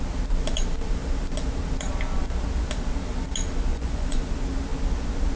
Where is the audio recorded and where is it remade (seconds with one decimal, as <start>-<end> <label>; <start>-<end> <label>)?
0.0-3.7 recorded; 3.7-4.3 remade; 4.3-5.4 recorded